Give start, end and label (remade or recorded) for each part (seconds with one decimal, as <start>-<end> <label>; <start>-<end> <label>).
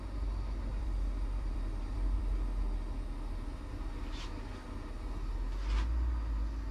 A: 0.0-0.7 recorded; 0.7-2.3 remade; 2.3-6.7 recorded